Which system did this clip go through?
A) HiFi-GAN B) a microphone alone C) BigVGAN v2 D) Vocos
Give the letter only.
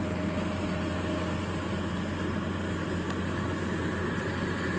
B